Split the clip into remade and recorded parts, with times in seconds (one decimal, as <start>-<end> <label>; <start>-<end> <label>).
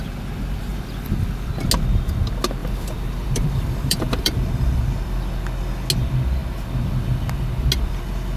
0.0-0.7 recorded; 0.7-1.5 remade; 1.5-2.6 recorded; 2.6-4.8 remade; 4.8-8.4 recorded